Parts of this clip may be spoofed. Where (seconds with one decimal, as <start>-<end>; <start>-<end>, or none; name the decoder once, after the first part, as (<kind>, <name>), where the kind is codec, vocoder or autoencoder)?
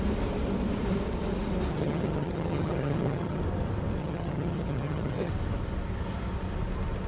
1.7-3.4 (vocoder, HiFi-GAN); 4.0-5.3